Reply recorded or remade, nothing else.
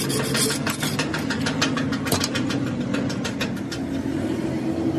recorded